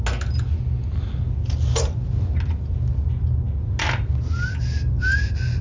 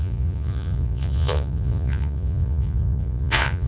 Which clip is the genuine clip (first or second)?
first